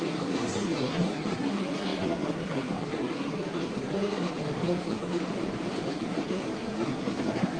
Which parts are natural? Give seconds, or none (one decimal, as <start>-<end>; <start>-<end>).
5.3-5.9